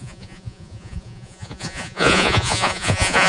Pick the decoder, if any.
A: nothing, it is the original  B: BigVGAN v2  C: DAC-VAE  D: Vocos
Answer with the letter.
D